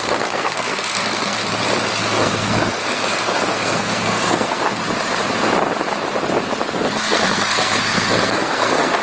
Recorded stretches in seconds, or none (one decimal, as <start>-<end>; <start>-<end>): 1.4-2.0; 4.8-6.8